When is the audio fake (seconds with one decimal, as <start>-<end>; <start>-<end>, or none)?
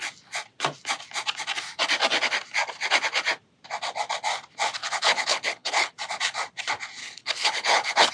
4.8-5.9; 7.0-8.1